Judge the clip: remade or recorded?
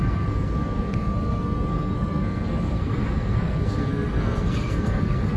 remade